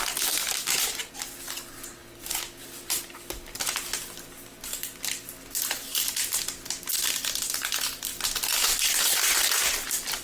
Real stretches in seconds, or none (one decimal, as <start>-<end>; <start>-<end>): 0.0-0.4; 1.1-10.2